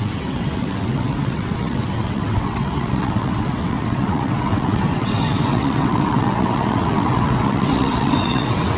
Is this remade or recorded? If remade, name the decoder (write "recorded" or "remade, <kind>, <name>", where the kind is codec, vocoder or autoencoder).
remade, vocoder, WaveNeXt